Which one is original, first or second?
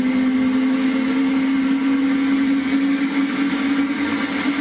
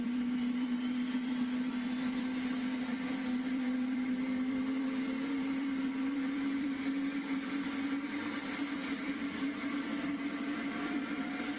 first